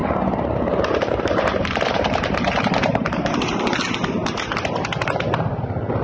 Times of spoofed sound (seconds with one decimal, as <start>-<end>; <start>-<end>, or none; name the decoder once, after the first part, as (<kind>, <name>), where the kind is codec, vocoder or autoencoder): 0.0-3.6 (vocoder, BigVGAN v2)